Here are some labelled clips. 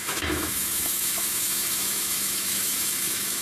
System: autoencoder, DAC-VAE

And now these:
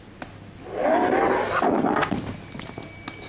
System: none